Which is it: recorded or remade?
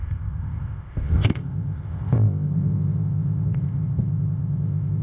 remade